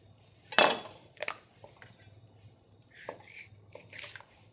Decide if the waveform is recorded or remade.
recorded